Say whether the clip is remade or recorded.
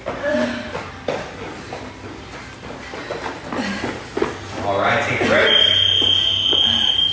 recorded